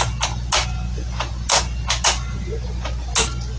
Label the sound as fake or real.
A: real